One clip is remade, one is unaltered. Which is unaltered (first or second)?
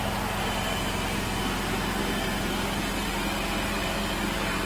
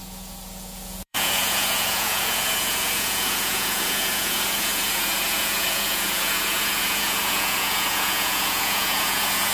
first